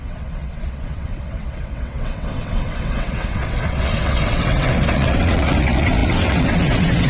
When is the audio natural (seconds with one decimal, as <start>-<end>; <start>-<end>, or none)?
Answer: none